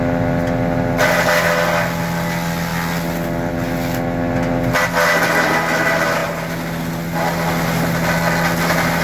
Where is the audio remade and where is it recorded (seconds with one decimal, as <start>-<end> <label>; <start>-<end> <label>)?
0.0-9.0 recorded